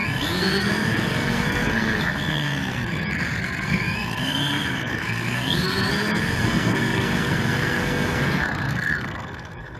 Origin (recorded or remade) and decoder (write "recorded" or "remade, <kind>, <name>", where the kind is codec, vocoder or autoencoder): remade, codec, SNAC